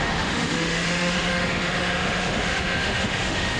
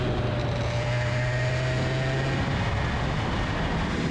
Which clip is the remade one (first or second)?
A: first